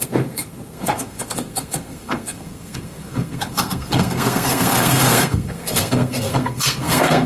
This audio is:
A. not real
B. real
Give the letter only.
A